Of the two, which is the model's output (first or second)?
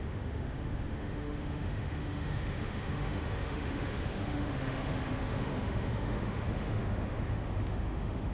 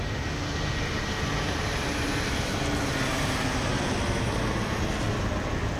first